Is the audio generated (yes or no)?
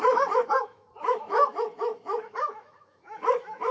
yes